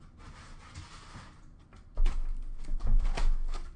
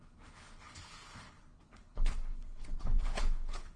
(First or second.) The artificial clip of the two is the second